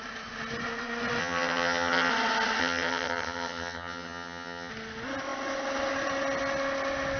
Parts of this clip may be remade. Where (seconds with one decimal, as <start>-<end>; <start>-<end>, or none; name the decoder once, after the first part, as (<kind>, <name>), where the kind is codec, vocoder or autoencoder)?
1.2-2.1 (vocoder, HiFi-GAN); 2.6-4.7